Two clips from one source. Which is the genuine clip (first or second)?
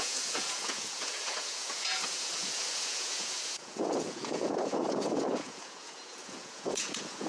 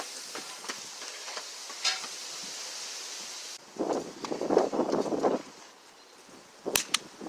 second